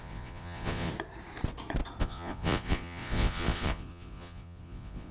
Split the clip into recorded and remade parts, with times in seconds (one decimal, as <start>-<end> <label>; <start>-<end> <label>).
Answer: 0.0-0.9 remade; 0.9-2.0 recorded; 2.0-5.1 remade